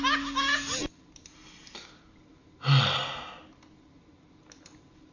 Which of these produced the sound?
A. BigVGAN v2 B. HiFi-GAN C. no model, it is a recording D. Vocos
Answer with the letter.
C